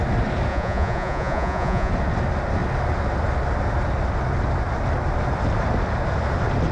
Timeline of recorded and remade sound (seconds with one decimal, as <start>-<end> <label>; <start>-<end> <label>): 0.0-0.5 recorded; 0.5-1.9 remade; 1.9-6.7 recorded